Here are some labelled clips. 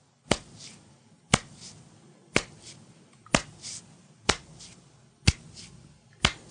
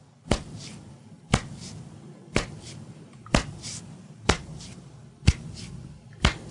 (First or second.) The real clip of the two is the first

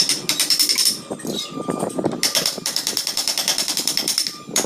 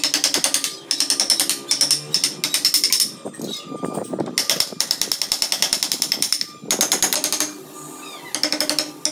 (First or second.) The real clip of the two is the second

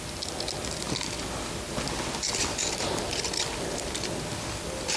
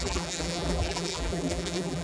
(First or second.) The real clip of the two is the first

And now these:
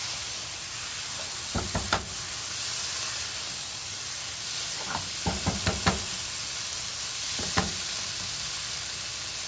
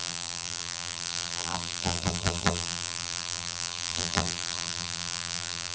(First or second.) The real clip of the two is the first